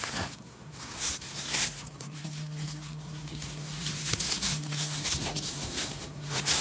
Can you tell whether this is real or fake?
fake